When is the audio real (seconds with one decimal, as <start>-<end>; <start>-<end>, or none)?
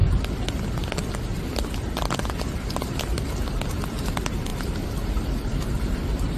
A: 0.0-4.5